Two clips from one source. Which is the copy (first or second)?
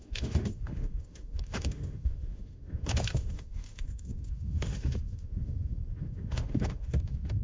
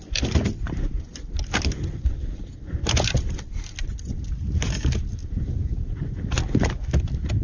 first